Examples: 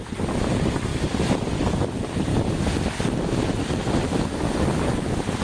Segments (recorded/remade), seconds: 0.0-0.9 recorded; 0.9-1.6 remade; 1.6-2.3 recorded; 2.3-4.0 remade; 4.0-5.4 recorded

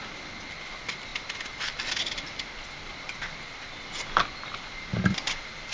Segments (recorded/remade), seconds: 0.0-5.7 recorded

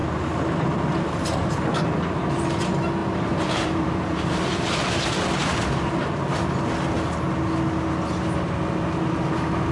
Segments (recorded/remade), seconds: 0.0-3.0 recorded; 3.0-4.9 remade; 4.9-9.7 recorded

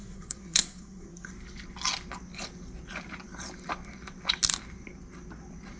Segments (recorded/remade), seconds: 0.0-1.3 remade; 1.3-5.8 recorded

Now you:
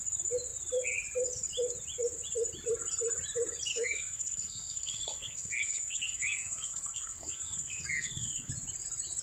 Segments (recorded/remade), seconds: 0.0-3.7 recorded; 3.7-8.5 remade; 8.5-9.2 recorded

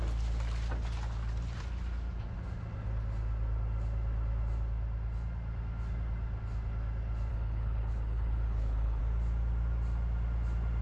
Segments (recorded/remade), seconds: 0.0-7.3 recorded; 7.3-9.0 remade; 9.0-10.8 recorded

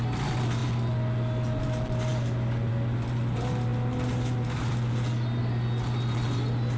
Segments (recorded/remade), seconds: 0.0-6.8 recorded